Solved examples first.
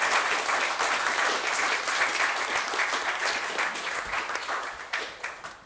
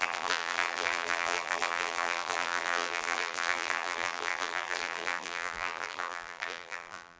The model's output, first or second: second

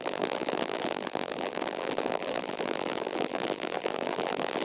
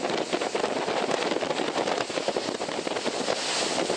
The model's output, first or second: first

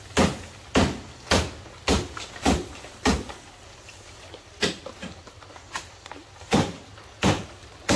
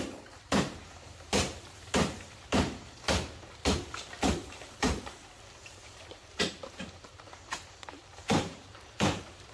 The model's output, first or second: second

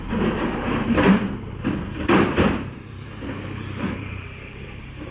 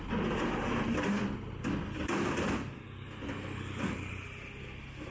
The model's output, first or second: first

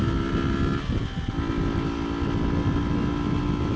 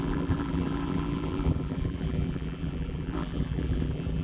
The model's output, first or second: second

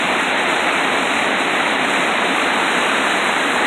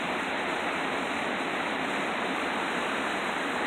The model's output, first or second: first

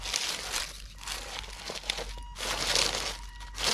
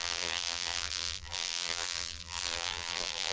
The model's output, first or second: second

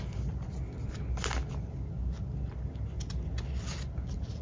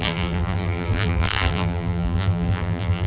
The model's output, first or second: second